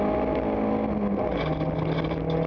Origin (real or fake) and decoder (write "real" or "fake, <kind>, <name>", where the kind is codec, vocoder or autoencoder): real